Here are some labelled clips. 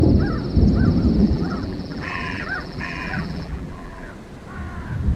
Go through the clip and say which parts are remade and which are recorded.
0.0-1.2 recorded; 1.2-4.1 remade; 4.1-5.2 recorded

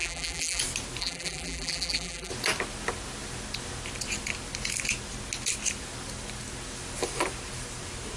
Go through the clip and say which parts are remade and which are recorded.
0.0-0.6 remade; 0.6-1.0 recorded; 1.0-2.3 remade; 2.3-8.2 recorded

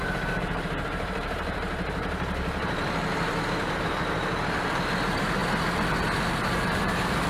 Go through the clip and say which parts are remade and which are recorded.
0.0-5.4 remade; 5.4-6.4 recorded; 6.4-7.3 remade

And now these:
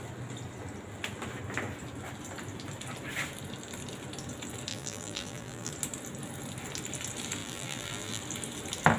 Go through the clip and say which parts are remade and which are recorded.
0.0-4.7 recorded; 4.7-5.7 remade; 5.7-7.4 recorded; 7.4-8.2 remade; 8.2-9.0 recorded

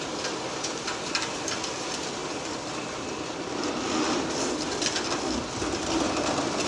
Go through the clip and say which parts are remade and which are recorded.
0.0-6.7 recorded

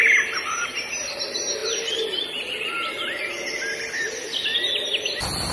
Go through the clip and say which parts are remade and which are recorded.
0.0-5.5 recorded

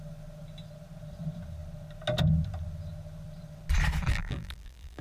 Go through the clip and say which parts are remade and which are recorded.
0.0-4.1 recorded; 4.1-5.0 remade

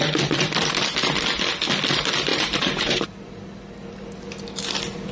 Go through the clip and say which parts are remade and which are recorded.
0.0-2.3 recorded; 2.3-3.2 remade; 3.2-5.1 recorded